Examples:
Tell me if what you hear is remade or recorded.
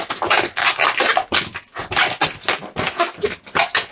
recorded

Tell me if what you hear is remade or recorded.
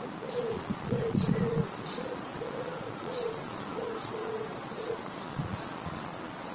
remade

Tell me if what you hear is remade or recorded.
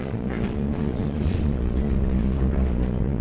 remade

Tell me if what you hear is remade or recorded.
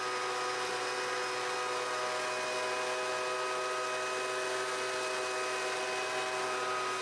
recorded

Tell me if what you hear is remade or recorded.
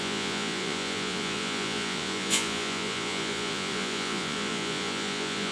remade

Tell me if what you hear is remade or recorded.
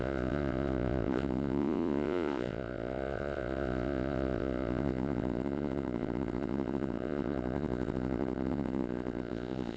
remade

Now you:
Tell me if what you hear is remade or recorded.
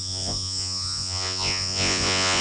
remade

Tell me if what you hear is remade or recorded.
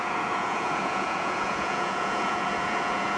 remade